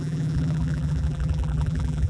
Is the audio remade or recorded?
remade